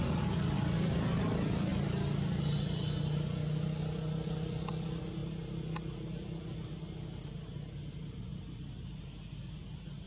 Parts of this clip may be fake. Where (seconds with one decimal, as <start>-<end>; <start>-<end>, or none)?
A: none